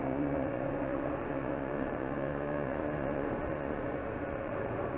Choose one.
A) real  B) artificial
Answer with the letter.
B